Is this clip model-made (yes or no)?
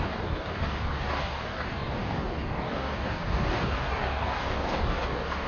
yes